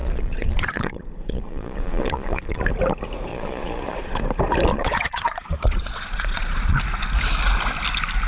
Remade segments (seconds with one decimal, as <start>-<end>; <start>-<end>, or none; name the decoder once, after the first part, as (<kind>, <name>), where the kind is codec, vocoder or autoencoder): 0.0-2.6 (vocoder, Vocos); 3.3-4.2; 4.7-6.8